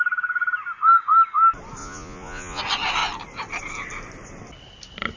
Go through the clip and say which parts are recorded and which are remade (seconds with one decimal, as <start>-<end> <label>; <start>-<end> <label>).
0.0-1.8 recorded; 1.8-2.6 remade; 2.6-5.2 recorded